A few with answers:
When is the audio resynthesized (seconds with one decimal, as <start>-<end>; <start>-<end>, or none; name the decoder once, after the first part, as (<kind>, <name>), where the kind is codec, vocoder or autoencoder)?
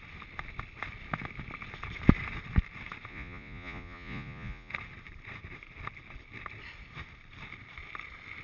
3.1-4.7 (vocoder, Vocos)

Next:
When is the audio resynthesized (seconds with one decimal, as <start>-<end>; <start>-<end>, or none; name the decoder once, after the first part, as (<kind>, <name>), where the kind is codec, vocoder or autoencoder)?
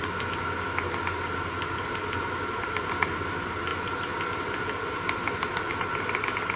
none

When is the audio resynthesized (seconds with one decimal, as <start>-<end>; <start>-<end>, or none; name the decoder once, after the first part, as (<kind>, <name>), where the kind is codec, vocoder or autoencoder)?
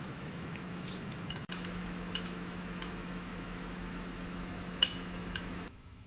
0.0-6.1 (autoencoder, DAC-VAE)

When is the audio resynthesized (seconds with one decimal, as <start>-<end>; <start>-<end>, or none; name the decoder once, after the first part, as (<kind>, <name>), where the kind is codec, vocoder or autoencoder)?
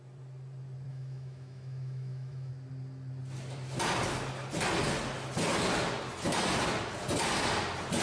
0.9-2.5 (autoencoder, DAC-VAE)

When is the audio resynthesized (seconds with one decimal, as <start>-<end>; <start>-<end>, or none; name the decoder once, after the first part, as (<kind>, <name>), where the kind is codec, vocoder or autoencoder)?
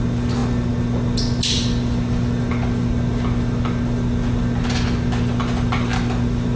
none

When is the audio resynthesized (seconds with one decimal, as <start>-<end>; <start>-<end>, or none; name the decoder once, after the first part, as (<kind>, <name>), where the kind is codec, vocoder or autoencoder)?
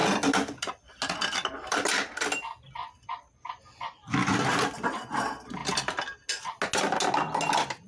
none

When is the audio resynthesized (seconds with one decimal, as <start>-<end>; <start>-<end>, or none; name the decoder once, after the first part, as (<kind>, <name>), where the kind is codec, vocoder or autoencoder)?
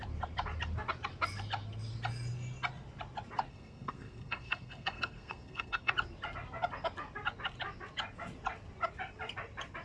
3.5-5.9 (codec, SNAC)